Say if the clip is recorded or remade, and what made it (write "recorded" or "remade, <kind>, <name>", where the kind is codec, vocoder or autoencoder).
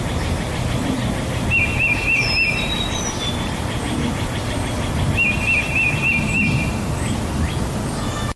recorded